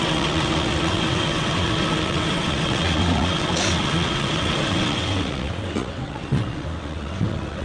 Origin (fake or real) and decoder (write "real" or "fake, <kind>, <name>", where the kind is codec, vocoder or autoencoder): fake, vocoder, WaveNeXt